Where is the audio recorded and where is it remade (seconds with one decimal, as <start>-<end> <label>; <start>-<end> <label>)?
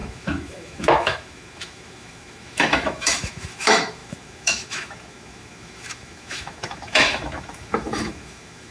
0.0-8.7 remade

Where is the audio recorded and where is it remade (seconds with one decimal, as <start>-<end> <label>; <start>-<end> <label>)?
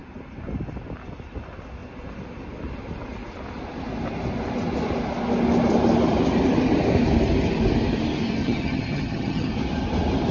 0.0-8.4 recorded; 8.4-9.5 remade; 9.5-10.3 recorded